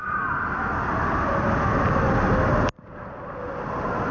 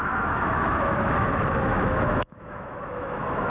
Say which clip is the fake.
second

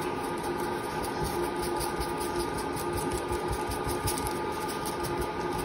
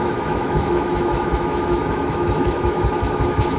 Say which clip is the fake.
second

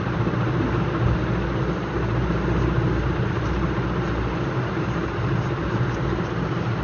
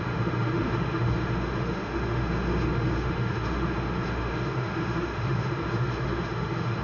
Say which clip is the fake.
second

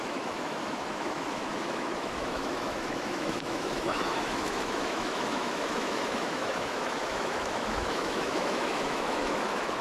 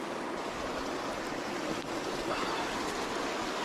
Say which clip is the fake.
first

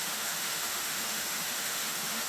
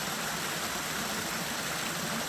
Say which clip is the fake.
first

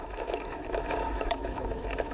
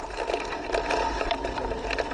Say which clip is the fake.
first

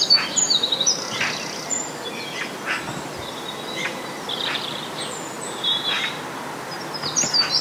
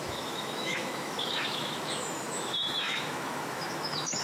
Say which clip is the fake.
second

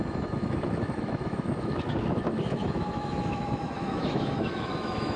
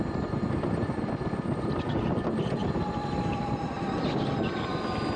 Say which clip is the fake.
first